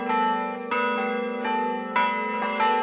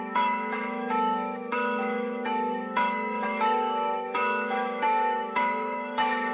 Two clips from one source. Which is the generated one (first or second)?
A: second